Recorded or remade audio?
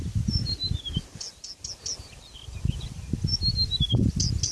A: recorded